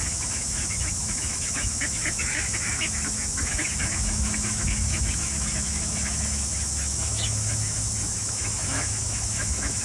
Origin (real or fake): fake